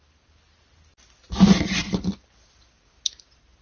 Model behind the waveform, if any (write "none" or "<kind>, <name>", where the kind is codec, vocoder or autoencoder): none